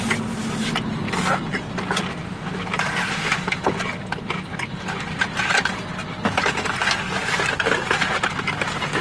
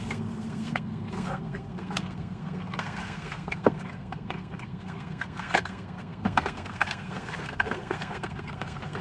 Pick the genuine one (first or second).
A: first